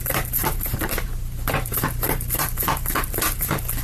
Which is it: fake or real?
fake